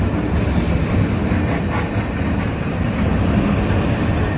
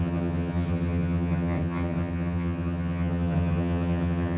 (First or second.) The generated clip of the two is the second